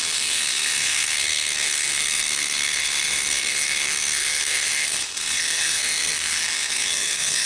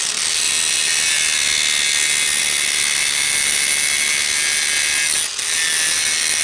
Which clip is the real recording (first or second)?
second